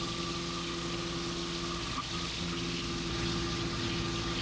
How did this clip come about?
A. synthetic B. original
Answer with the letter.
B